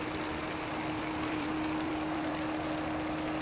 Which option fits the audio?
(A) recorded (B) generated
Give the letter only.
B